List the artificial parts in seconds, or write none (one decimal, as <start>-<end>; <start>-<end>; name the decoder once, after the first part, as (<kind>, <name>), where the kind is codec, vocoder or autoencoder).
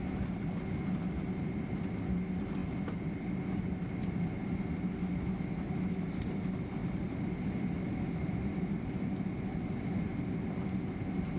none